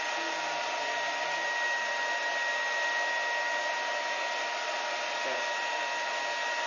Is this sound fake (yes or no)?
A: no